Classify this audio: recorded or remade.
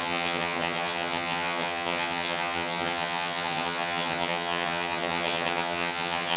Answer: remade